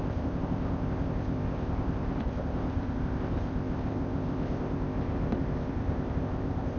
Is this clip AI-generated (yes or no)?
yes